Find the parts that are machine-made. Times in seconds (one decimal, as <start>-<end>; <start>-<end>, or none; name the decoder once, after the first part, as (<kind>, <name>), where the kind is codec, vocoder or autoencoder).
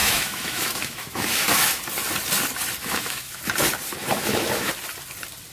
0.0-1.8 (autoencoder, DAC-VAE); 2.8-3.4; 4.0-4.7